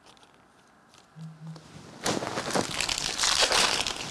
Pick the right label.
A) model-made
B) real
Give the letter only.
B